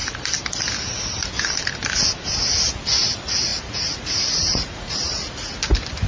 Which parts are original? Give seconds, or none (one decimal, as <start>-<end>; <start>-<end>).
0.0-3.5; 5.2-6.1